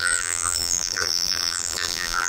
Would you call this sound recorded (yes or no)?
no